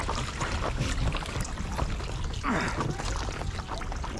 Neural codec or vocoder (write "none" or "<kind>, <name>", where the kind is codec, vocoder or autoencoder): none